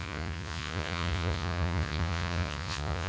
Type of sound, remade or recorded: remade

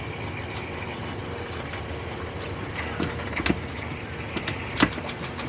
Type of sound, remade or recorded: recorded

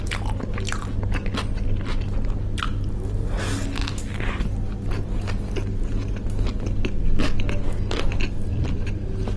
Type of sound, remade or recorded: recorded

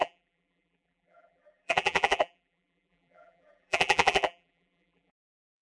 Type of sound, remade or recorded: remade